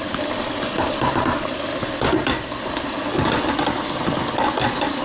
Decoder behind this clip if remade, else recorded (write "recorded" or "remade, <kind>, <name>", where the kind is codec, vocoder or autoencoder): recorded